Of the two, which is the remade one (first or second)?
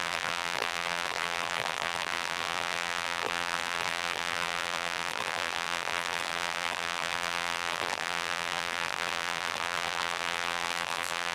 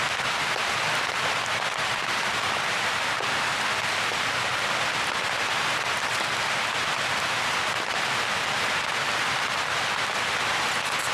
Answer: first